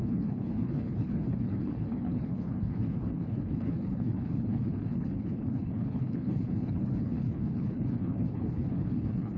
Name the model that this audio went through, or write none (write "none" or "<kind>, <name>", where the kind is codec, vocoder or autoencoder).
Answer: codec, HILCodec